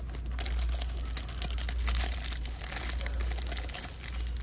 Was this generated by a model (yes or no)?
no